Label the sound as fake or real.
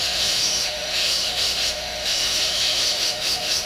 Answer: fake